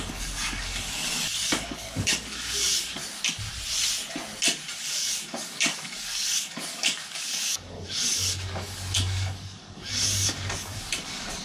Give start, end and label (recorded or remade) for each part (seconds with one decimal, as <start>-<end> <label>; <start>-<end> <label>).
0.0-3.0 remade; 3.0-4.8 recorded; 4.8-11.4 remade

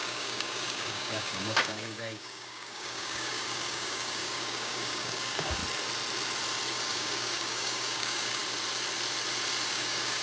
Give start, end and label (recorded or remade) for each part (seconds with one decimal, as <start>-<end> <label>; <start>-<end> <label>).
0.0-5.6 remade; 5.6-6.7 recorded; 6.7-8.4 remade; 8.4-9.7 recorded; 9.7-10.2 remade

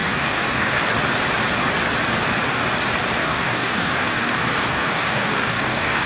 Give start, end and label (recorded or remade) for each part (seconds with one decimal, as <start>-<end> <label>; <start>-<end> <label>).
0.0-0.8 remade; 0.8-3.2 recorded; 3.2-6.1 remade

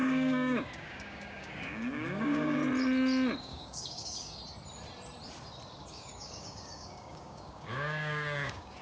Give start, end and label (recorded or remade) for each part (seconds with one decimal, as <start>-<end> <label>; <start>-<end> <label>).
0.0-2.6 remade; 2.6-3.4 recorded; 3.4-4.4 remade; 4.4-5.9 recorded; 5.9-8.8 remade

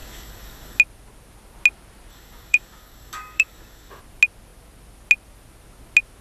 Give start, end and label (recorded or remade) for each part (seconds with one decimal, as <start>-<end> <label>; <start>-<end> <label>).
0.0-0.8 remade; 0.8-2.1 recorded; 2.1-4.0 remade; 4.0-6.2 recorded

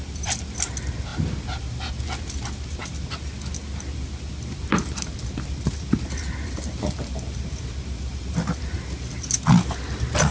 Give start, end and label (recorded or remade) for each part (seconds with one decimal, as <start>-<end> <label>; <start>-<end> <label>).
0.0-10.3 recorded

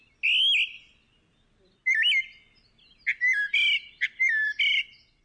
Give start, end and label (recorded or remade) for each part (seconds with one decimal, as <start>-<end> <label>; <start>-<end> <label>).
0.0-5.2 recorded

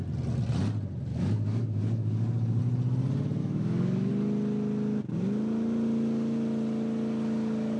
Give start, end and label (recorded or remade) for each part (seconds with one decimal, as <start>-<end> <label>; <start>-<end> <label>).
0.0-1.1 recorded; 1.1-2.6 remade; 2.6-3.4 recorded; 3.4-4.1 remade; 4.1-7.8 recorded